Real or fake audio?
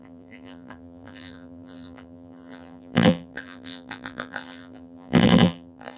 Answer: fake